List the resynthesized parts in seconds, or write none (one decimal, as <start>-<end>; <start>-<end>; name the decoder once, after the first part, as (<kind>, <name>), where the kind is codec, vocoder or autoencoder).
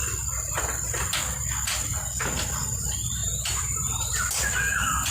3.2-4.1 (vocoder, BigVGAN v2)